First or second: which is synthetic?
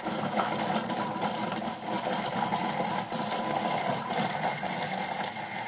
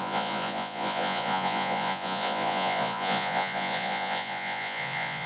second